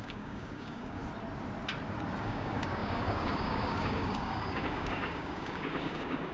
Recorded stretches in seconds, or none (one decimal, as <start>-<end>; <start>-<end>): 1.0-2.2